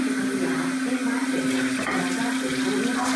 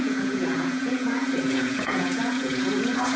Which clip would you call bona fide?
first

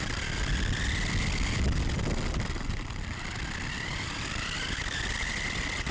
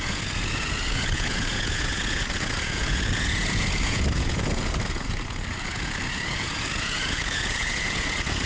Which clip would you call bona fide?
first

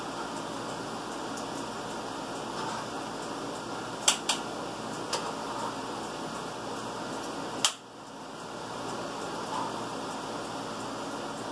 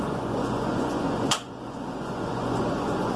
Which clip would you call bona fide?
first